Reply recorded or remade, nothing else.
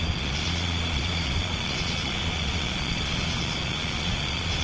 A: remade